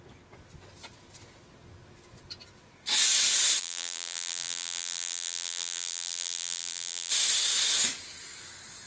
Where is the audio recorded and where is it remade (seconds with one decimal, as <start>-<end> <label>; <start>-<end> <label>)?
0.0-3.6 recorded; 3.6-7.1 remade; 7.1-8.9 recorded